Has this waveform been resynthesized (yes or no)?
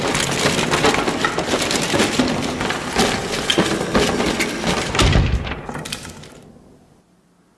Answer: no